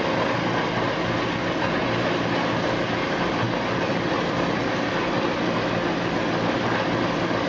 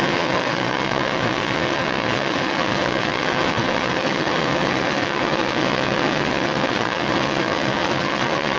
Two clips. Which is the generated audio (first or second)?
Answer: second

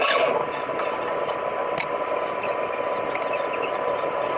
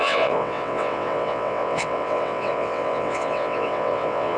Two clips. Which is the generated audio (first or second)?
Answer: second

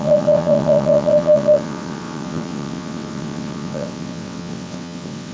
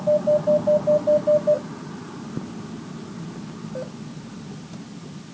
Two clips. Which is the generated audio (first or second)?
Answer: first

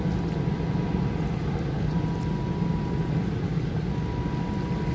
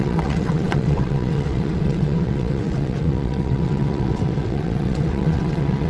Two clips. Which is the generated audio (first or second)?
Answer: second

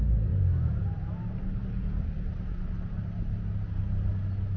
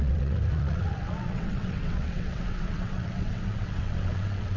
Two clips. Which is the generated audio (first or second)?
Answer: second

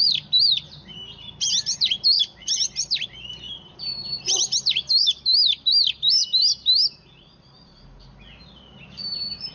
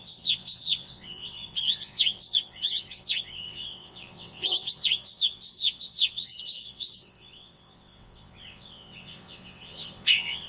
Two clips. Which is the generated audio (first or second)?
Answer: second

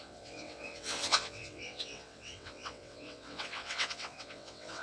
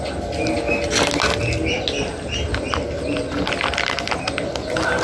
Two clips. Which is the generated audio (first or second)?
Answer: first